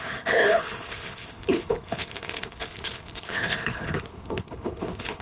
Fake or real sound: fake